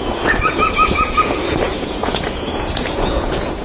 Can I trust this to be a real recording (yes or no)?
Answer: no